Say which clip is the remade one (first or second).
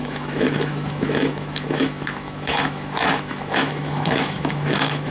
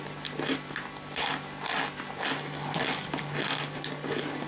first